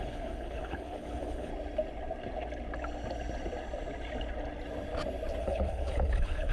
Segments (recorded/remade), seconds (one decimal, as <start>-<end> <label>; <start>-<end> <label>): 0.0-1.5 remade; 1.5-5.4 recorded; 5.4-6.5 remade